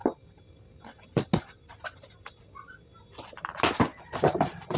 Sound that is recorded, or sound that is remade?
recorded